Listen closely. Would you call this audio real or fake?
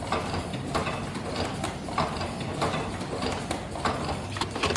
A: real